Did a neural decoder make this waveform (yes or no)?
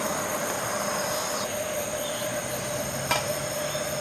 no